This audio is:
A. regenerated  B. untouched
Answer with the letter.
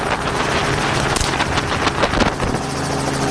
B